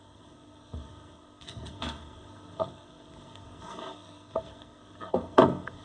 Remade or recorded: remade